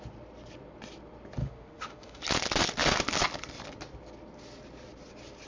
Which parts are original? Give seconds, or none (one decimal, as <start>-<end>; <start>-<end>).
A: 0.0-1.4; 2.2-5.5